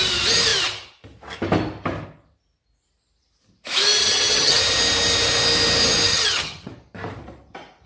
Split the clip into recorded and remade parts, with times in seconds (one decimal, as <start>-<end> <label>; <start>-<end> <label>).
0.0-4.0 recorded; 4.0-4.6 remade; 4.6-6.1 recorded; 6.1-6.7 remade; 6.7-7.9 recorded